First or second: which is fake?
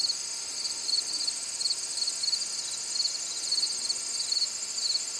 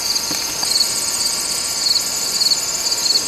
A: second